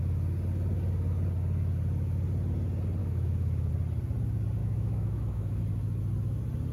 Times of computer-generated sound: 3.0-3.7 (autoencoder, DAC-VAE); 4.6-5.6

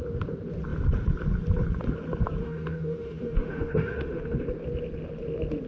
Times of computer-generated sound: 2.4-4.4 (autoencoder, DAC-VAE)

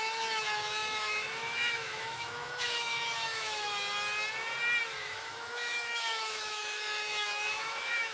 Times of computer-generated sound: 0.0-3.7 (autoencoder, DAC-VAE); 5.0-8.1

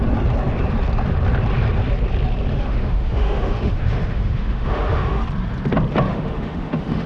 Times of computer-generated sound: 2.5-5.2 (autoencoder, DAC-VAE); 6.1-7.1